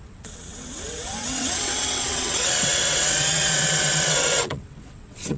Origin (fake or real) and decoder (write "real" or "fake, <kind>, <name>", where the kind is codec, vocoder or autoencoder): fake, vocoder, WaveNeXt